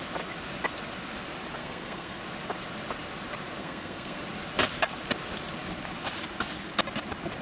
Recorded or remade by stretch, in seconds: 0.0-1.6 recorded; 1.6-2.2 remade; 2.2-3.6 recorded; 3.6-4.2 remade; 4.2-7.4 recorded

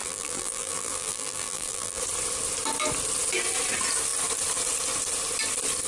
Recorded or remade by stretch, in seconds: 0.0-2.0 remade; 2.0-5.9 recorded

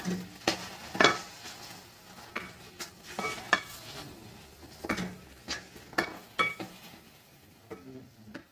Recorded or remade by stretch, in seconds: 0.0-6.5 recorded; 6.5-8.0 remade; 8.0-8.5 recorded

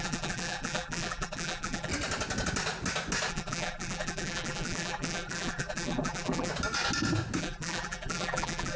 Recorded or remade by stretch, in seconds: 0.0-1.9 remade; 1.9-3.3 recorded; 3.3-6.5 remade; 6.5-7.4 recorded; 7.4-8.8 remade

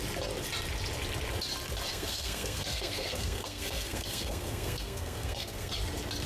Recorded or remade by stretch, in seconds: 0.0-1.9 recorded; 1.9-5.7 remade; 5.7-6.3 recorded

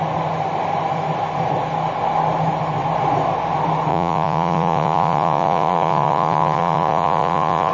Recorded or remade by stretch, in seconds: 0.0-3.9 recorded; 3.9-7.7 remade

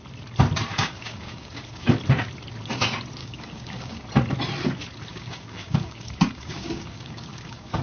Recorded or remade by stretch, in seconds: 0.0-0.7 recorded; 0.7-1.9 remade; 1.9-3.2 recorded; 3.2-4.0 remade; 4.0-5.1 recorded; 5.1-7.8 remade

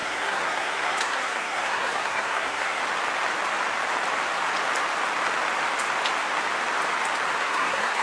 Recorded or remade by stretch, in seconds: 0.0-2.8 remade; 2.8-7.4 recorded; 7.4-8.0 remade